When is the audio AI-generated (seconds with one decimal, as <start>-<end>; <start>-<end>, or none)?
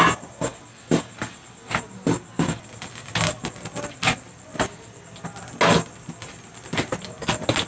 none